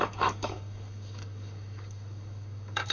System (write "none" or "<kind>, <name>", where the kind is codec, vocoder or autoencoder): codec, DAC